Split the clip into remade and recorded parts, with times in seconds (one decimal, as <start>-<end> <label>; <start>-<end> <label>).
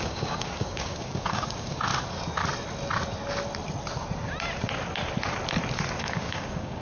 0.0-1.9 remade; 1.9-6.0 recorded; 6.0-6.8 remade